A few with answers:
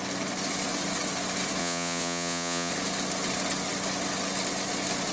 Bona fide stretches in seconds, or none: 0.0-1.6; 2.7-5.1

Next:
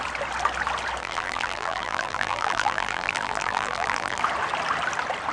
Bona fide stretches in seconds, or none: 0.0-1.0; 4.2-5.3